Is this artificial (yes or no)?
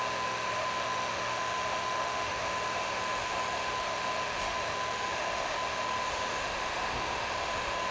yes